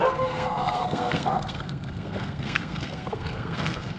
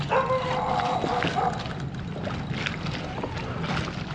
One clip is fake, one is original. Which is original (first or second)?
second